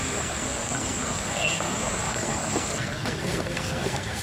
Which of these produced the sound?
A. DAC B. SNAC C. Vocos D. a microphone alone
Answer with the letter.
B